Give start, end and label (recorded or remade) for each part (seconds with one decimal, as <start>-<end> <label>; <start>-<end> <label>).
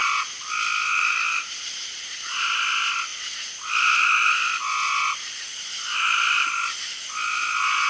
0.0-7.9 recorded